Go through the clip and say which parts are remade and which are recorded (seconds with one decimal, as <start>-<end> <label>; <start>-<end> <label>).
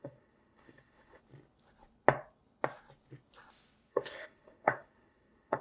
0.0-1.2 remade; 1.2-3.9 recorded; 3.9-5.6 remade